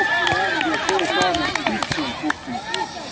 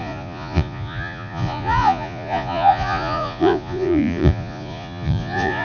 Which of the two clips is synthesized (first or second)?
second